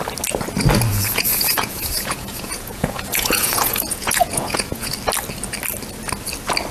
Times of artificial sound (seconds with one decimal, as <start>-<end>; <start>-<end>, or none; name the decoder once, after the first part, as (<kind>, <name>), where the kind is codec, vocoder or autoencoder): 0.9-4.9 (vocoder, Vocos)